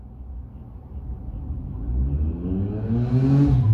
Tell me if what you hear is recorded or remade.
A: recorded